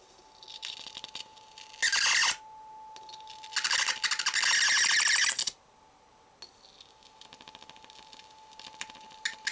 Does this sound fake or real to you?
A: real